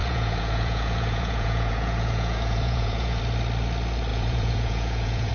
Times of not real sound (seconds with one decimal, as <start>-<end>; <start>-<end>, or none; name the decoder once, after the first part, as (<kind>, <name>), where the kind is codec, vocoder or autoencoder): 0.0-3.2 (vocoder, Vocos); 4.1-5.3